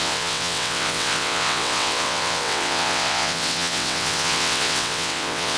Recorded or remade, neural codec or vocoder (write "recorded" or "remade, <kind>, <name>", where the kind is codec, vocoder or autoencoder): remade, vocoder, WaveNeXt